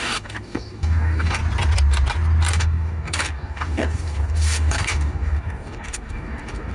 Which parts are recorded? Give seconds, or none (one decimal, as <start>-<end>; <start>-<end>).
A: 1.4-2.5